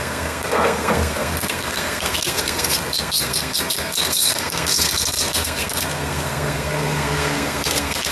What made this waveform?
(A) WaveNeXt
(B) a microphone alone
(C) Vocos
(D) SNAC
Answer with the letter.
D